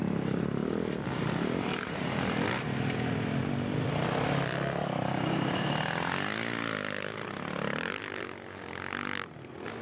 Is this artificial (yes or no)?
no